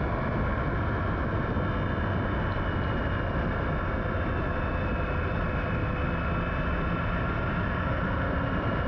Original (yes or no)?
yes